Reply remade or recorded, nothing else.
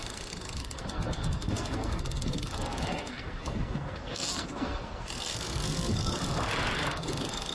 remade